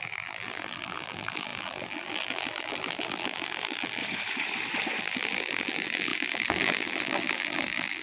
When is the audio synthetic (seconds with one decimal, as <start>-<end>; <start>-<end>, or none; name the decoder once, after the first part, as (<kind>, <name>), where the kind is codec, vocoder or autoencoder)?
0.0-4.0 (vocoder, BigVGAN v2); 5.0-8.0